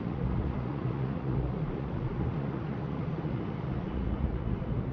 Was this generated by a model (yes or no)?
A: yes